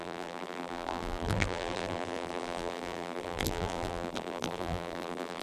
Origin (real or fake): fake